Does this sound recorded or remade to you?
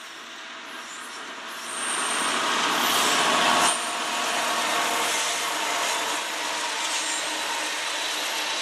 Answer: recorded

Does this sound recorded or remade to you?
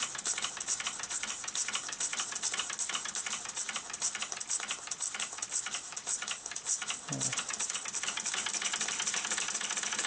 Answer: recorded